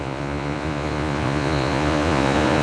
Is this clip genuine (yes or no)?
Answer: no